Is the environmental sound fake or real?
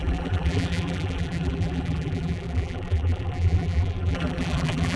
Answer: fake